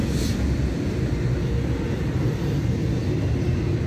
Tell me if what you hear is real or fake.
real